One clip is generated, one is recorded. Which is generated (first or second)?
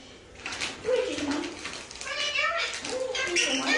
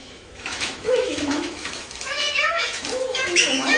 second